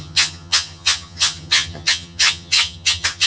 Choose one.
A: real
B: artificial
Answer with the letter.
B